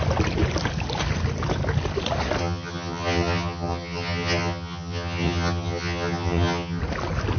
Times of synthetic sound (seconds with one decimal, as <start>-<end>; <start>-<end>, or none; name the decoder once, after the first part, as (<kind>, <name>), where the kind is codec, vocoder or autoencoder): 2.4-6.8 (vocoder, HiFi-GAN)